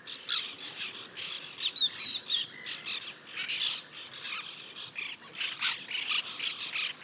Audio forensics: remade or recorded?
recorded